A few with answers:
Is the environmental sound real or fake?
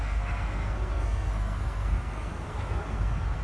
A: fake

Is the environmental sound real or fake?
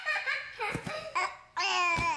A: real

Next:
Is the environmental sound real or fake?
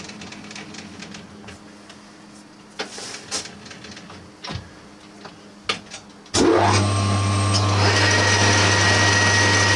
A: real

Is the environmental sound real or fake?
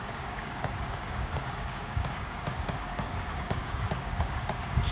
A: fake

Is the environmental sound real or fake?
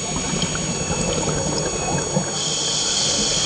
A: real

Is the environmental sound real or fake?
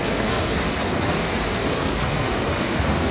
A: fake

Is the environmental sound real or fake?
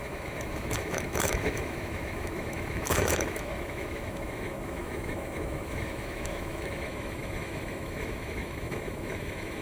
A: fake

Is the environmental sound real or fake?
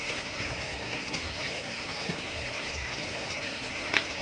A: fake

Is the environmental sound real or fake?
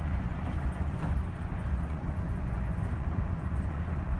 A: fake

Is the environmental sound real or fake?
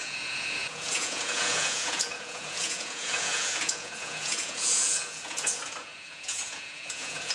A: fake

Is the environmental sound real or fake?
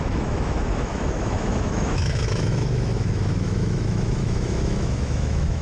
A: fake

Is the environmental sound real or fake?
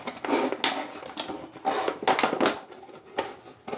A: real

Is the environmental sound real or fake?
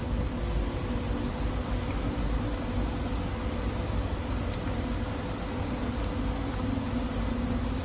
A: real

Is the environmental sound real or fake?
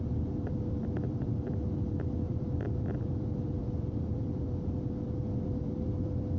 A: fake